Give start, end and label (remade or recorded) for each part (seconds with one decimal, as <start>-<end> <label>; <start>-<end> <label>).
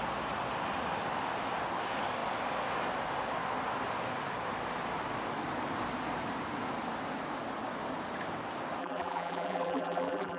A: 0.0-8.8 recorded; 8.8-10.4 remade